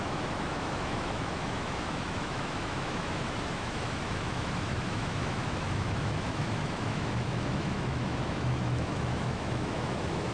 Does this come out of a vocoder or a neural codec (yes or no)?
yes